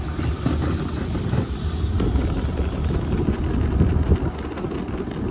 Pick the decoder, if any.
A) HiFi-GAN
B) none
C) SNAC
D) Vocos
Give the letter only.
B